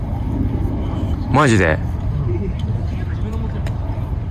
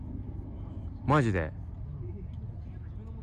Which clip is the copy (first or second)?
first